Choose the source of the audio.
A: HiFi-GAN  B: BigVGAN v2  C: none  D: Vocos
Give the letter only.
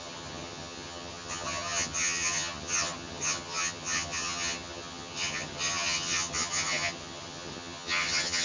A